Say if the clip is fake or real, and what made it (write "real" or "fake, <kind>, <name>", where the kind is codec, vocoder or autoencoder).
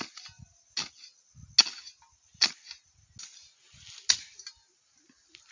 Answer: real